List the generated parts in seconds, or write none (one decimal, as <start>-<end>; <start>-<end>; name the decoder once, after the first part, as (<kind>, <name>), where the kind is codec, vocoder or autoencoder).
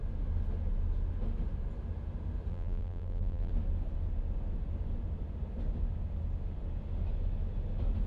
2.5-3.5 (vocoder, BigVGAN v2)